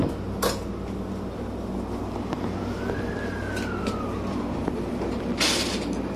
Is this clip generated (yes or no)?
no